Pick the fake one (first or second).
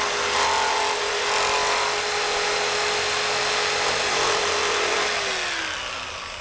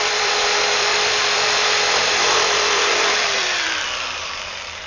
second